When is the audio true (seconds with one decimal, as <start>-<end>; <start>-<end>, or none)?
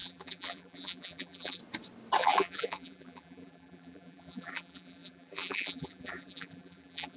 1.6-2.2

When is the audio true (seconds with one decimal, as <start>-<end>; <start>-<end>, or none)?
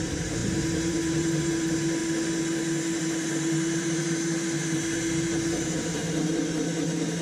2.0-3.0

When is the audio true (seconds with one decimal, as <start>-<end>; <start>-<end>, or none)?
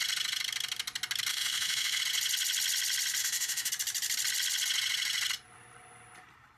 0.0-1.3; 2.0-3.2; 3.7-6.6